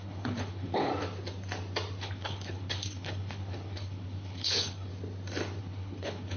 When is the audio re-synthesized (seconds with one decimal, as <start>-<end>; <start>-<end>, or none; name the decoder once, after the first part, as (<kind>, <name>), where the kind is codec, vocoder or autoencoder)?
0.0-0.9 (codec, HILCodec); 2.0-4.9; 5.6-6.4